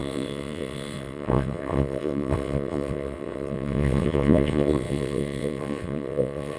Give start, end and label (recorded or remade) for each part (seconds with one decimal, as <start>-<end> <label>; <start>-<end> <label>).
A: 0.0-6.6 remade